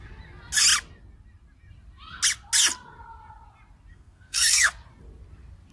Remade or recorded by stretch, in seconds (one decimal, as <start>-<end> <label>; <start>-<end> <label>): 0.0-3.9 recorded; 3.9-4.7 remade; 4.7-5.7 recorded